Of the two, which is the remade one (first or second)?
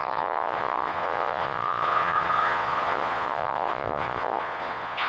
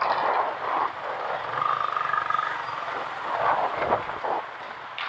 first